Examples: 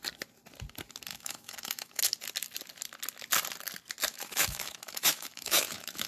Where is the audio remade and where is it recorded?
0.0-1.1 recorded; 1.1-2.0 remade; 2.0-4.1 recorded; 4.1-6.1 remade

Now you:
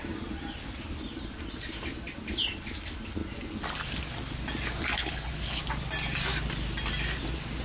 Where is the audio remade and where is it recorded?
0.0-5.0 recorded; 5.0-5.6 remade; 5.6-7.6 recorded

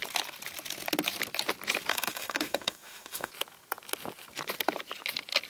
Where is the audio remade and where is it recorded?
0.0-1.9 recorded; 1.9-3.3 remade; 3.3-5.5 recorded

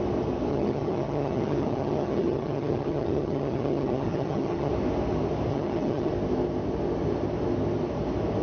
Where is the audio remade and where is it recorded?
0.0-0.5 recorded; 0.5-4.7 remade; 4.7-5.5 recorded; 5.5-6.1 remade; 6.1-8.4 recorded